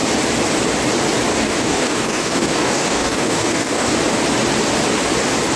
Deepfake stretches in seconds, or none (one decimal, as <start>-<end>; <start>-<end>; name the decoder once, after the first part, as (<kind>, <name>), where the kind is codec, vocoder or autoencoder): 1.3-3.9 (codec, DAC)